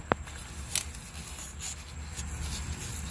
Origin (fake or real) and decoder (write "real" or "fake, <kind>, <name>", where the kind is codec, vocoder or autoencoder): real